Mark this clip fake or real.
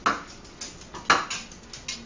real